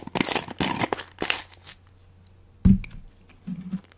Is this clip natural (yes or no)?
yes